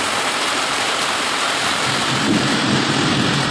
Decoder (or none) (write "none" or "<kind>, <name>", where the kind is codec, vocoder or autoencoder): vocoder, BigVGAN v2